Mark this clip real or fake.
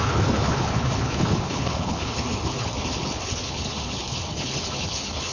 fake